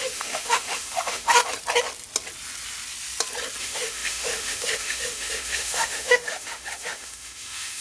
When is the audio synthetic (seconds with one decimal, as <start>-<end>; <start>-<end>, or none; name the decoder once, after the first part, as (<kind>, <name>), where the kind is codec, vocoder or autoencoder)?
0.0-1.4 (autoencoder, DAC-VAE); 3.6-7.8